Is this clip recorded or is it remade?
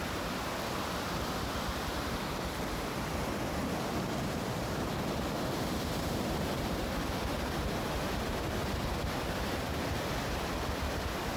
remade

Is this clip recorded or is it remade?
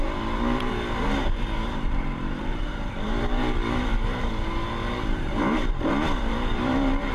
remade